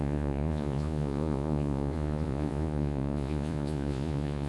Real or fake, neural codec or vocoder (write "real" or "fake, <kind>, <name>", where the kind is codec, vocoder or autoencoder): fake, vocoder, Vocos